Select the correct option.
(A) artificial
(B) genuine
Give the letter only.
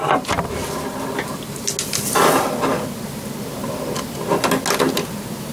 B